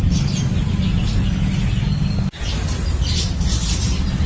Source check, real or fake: real